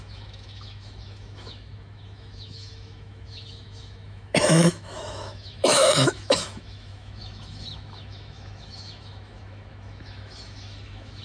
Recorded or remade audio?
remade